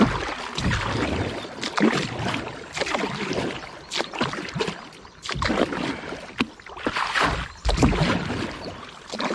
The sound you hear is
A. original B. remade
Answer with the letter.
A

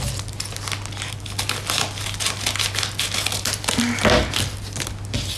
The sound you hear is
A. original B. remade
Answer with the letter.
A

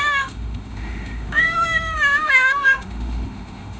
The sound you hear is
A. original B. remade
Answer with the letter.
B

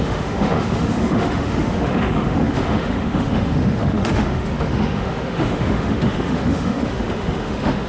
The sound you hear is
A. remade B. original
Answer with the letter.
A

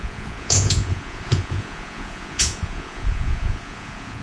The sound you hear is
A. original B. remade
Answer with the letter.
B